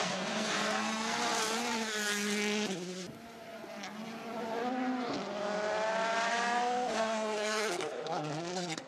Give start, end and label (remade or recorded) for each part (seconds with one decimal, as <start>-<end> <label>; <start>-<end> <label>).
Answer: 0.0-1.2 remade; 1.2-6.3 recorded; 6.3-8.9 remade